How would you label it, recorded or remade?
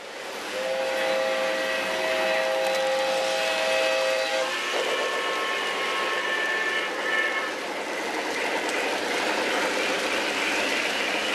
recorded